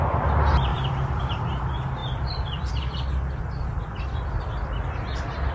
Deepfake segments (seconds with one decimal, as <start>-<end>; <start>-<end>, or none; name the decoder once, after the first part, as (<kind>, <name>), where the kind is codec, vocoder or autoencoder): 0.7-1.6 (vocoder, BigVGAN v2); 2.0-2.7